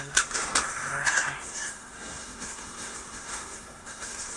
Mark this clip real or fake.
fake